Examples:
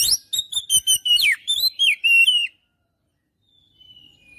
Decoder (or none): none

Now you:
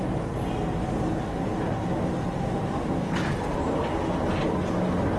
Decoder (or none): none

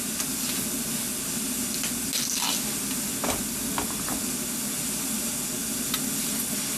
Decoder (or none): none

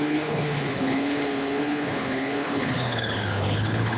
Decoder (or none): codec, HILCodec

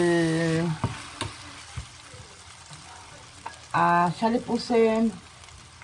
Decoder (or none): none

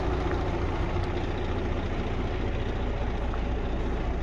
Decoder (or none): none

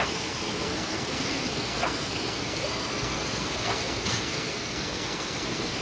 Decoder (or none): codec, SNAC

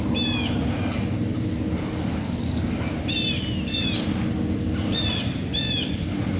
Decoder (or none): none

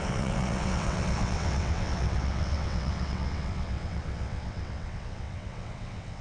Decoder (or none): vocoder, WaveNeXt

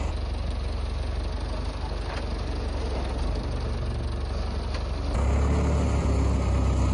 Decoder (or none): none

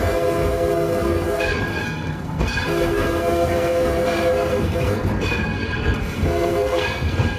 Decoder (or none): codec, SNAC